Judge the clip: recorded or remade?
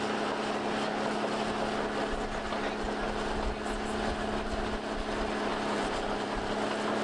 recorded